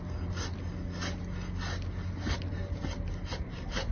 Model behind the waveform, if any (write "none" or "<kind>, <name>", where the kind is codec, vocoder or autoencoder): none